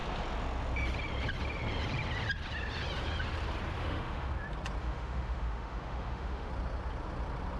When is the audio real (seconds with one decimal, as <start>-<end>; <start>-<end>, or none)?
0.0-3.8; 4.3-4.8; 6.5-7.6